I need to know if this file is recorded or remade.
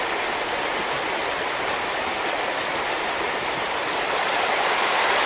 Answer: recorded